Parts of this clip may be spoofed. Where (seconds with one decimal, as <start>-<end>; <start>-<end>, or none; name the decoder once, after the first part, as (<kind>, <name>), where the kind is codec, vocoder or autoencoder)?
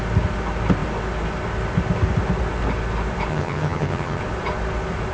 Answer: 3.3-4.2 (vocoder, HiFi-GAN)